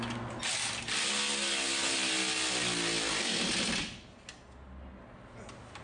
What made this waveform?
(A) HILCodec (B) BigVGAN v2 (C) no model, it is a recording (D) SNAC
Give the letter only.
C